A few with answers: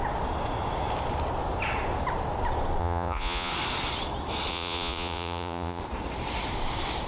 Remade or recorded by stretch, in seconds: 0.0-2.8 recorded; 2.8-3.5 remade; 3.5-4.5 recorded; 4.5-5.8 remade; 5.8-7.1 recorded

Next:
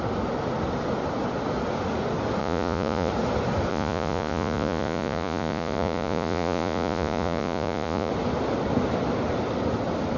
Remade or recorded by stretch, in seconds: 0.0-2.4 recorded; 2.4-3.1 remade; 3.1-3.7 recorded; 3.7-8.1 remade; 8.1-10.2 recorded

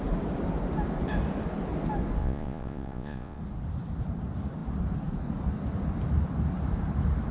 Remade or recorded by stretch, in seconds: 0.0-2.2 recorded; 2.2-3.4 remade; 3.4-7.3 recorded

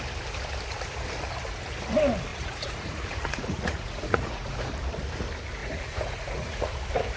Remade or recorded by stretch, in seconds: 0.0-2.3 recorded; 2.3-4.7 remade; 4.7-5.6 recorded; 5.6-6.7 remade; 6.7-7.2 recorded

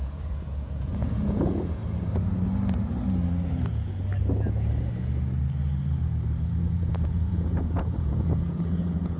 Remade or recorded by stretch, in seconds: 0.0-1.8 remade; 1.8-6.6 recorded; 6.6-9.2 remade